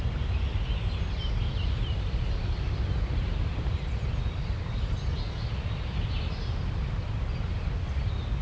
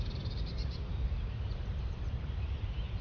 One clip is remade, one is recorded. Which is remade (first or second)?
second